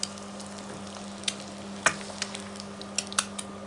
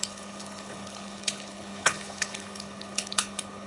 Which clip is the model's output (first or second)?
second